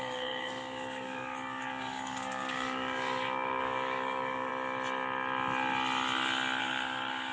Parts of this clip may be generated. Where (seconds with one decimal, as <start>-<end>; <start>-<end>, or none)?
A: 0.0-4.5; 6.6-7.3